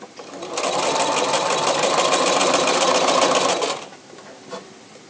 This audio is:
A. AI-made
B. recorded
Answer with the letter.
B